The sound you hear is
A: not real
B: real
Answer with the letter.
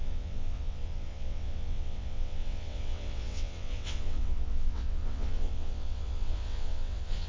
A